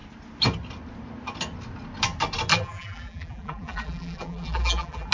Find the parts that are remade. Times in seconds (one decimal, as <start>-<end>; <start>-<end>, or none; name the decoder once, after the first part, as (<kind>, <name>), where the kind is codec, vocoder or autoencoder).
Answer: 2.5-5.1 (vocoder, BigVGAN v2)